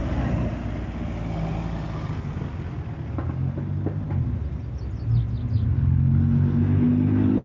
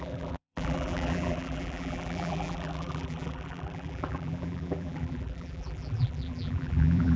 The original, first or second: first